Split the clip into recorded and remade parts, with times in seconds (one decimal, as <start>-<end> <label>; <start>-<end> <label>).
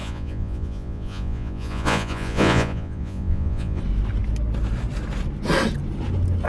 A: 0.0-3.8 remade; 3.8-6.5 recorded